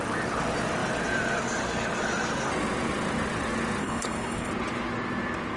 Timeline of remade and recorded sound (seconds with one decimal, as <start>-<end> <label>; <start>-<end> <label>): 0.0-3.8 recorded; 3.8-4.5 remade; 4.5-5.6 recorded